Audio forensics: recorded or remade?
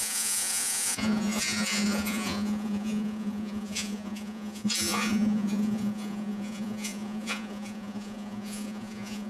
remade